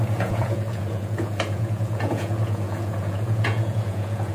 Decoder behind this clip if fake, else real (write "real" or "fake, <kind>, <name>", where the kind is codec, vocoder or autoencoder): fake, vocoder, Vocos